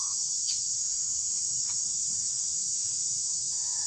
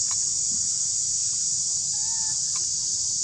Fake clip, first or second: first